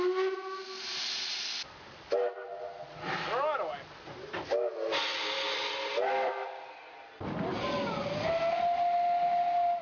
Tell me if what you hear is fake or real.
real